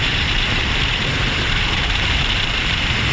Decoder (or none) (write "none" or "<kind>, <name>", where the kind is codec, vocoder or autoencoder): vocoder, BigVGAN v2